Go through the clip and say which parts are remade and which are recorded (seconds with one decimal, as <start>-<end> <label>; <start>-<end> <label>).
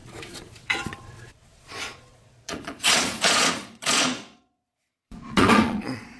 0.0-6.2 remade